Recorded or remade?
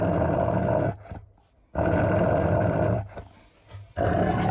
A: recorded